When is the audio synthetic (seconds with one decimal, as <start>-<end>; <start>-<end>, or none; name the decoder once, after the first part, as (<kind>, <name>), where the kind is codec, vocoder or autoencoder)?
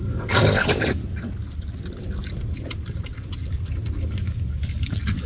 0.0-1.0 (codec, DAC); 4.2-5.3